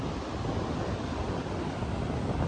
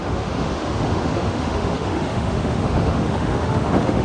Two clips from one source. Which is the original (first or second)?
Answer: first